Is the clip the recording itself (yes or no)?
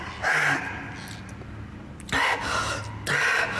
yes